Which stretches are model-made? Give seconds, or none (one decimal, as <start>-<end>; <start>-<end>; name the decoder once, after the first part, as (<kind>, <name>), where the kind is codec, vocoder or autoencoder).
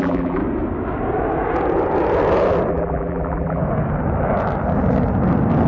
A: 0.0-0.4 (vocoder, BigVGAN v2); 2.7-3.6